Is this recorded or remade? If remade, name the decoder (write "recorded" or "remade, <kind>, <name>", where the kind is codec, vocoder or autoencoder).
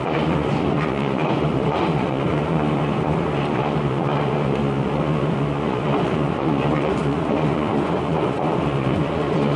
remade, vocoder, Vocos